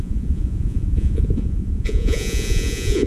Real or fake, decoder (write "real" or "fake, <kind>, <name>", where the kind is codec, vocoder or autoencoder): fake, vocoder, Vocos